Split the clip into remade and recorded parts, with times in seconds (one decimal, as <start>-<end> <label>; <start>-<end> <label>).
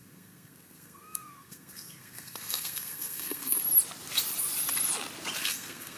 0.0-3.6 remade; 3.6-5.4 recorded; 5.4-6.0 remade